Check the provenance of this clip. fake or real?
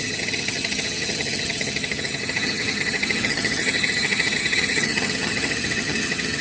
fake